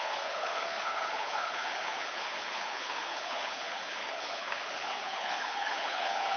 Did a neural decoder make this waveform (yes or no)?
yes